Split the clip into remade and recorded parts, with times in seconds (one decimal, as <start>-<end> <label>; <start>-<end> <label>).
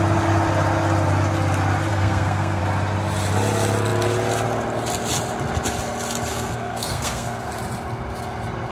0.0-1.9 recorded; 1.9-2.6 remade; 2.6-6.3 recorded; 6.3-7.5 remade; 7.5-8.7 recorded